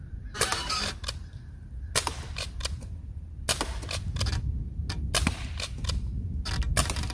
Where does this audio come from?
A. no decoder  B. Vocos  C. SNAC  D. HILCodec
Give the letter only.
A